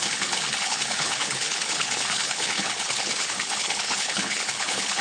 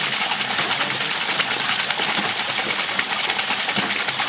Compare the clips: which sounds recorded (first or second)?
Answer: second